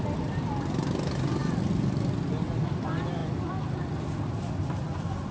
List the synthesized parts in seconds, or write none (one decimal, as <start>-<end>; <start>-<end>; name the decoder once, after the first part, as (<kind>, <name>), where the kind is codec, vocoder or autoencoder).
none